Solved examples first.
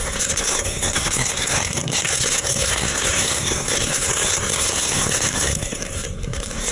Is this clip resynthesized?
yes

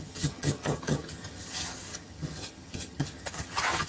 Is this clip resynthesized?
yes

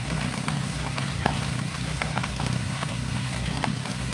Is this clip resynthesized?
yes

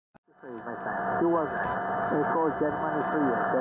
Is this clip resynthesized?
no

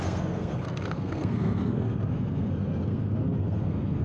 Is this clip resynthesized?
yes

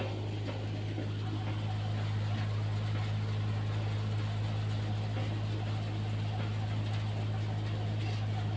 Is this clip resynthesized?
no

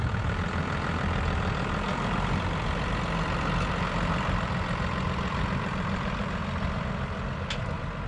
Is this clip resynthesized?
yes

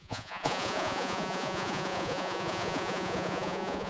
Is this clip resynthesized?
yes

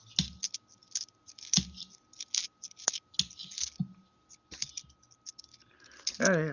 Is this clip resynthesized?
no